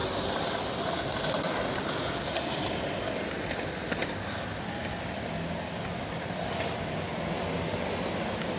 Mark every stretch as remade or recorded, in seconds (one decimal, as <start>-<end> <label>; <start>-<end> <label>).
0.0-8.6 recorded